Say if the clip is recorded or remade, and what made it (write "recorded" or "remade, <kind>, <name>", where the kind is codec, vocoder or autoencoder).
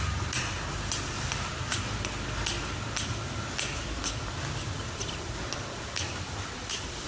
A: recorded